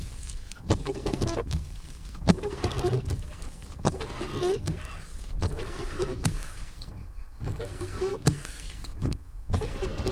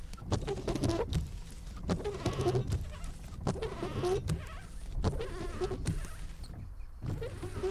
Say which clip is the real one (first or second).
second